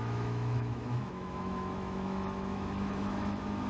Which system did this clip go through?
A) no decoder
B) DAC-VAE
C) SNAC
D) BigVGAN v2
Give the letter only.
B